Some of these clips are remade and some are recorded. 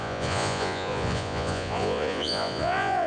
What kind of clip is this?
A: remade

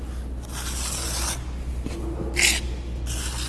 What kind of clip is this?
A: recorded